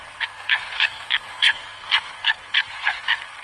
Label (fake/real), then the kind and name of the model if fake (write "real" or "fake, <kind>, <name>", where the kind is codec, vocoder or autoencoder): fake, codec, SNAC